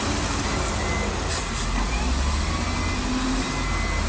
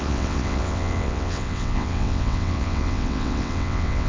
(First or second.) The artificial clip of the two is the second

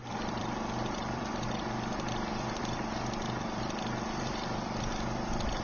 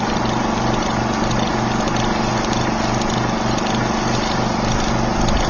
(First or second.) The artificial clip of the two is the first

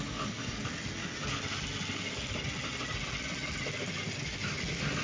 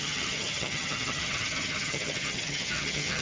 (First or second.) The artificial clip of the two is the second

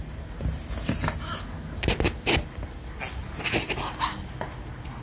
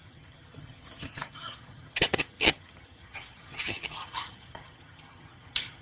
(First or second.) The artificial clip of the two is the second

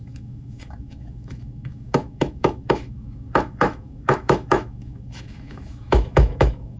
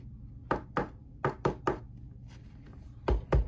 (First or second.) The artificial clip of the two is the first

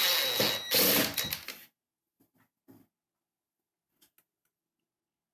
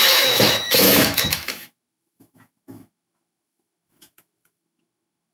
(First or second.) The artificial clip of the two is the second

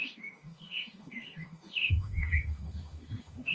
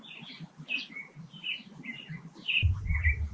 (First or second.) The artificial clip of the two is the first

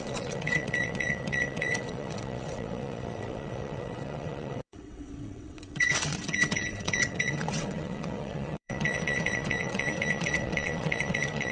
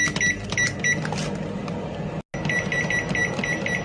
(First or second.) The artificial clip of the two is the first